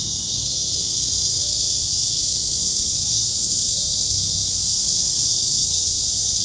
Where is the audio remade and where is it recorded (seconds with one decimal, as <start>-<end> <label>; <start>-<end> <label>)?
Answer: 0.0-6.4 remade